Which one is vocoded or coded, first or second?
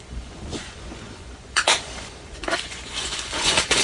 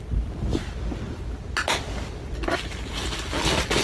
first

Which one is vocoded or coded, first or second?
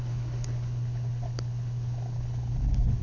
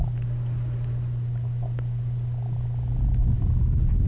first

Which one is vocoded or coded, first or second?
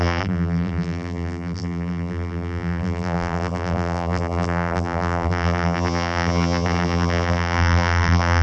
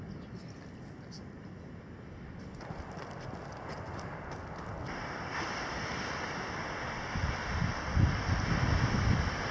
first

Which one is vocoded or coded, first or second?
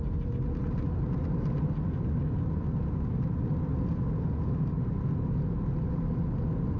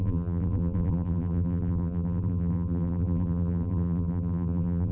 second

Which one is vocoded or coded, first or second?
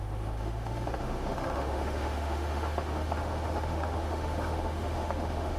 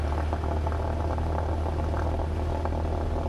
first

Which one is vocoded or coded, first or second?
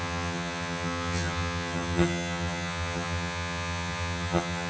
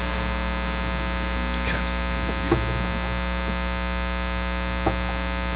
first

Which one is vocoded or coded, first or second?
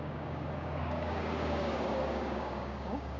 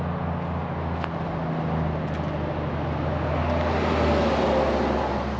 first